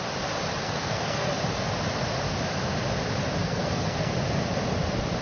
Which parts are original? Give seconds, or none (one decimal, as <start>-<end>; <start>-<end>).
0.0-0.6; 1.3-3.4; 4.1-5.2